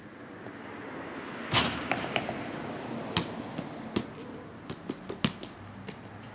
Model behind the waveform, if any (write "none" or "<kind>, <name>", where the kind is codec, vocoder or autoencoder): none